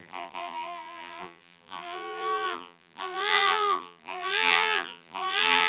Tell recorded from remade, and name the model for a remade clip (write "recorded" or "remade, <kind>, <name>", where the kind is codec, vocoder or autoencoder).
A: remade, vocoder, BigVGAN v2